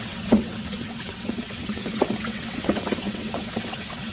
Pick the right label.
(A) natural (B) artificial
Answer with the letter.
B